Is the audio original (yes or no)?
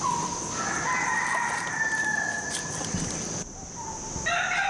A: yes